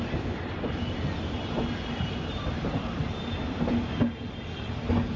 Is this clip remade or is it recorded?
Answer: recorded